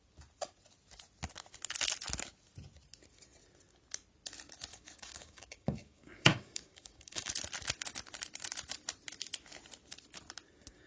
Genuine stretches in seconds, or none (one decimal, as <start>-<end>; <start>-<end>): 0.0-4.7; 7.3-10.9